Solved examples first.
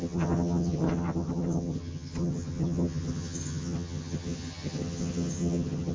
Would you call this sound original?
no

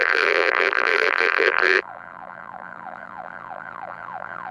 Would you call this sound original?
no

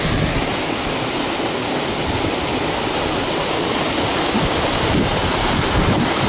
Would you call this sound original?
yes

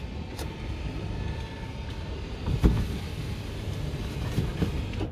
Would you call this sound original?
yes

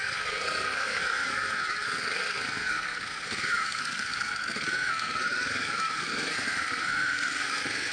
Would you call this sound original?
no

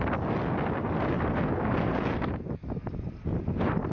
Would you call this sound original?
yes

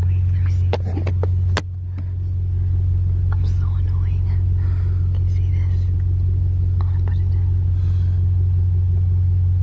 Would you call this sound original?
yes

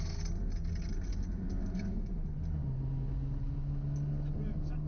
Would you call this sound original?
yes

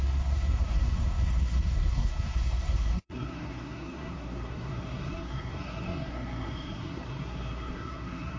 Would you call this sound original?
no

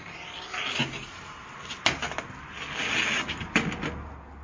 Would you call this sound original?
yes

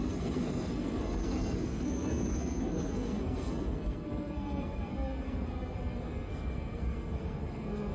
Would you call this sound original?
no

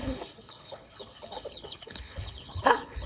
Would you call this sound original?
no